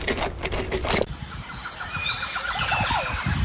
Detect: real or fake real